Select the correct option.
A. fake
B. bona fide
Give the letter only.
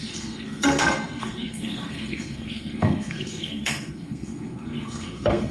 A